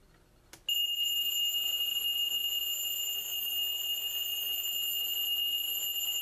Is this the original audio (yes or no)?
yes